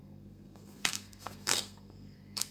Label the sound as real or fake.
fake